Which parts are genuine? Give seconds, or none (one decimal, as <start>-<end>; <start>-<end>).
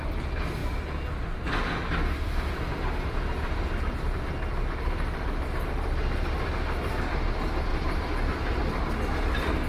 0.0-7.7; 8.8-9.7